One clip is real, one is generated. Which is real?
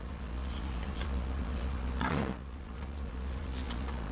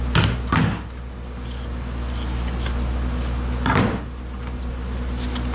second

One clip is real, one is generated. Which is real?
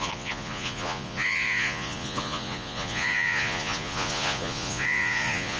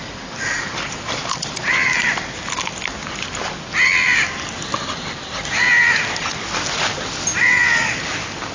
second